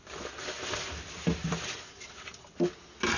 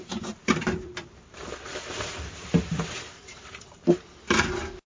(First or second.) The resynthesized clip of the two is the second